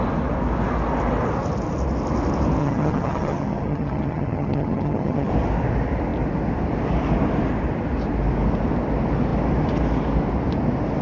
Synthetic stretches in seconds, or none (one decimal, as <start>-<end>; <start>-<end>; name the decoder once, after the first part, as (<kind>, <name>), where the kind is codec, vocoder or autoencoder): 2.6-5.3 (vocoder, HiFi-GAN)